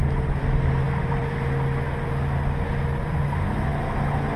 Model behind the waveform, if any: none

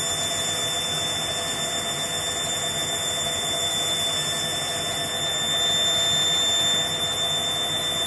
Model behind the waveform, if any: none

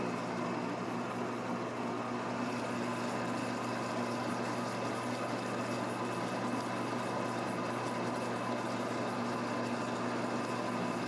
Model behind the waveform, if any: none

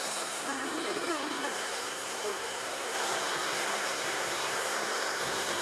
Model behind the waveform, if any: codec, SNAC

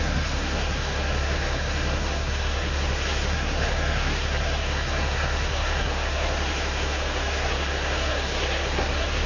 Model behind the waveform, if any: codec, SNAC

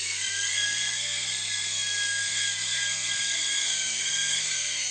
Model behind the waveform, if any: codec, SNAC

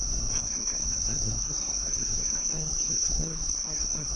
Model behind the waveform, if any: codec, SNAC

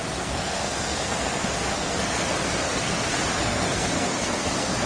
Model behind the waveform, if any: codec, SNAC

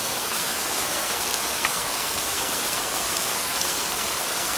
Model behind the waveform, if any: codec, SNAC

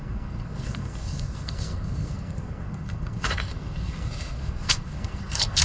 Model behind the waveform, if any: codec, SNAC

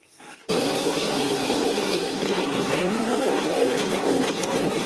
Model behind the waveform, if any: codec, SNAC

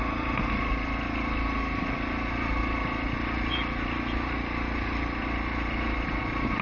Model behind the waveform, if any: none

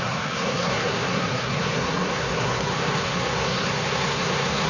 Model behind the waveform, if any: codec, SNAC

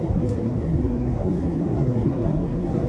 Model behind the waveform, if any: codec, SNAC